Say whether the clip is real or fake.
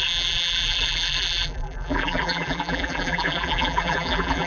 fake